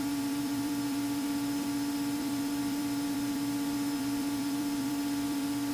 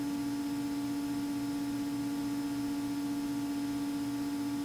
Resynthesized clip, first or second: first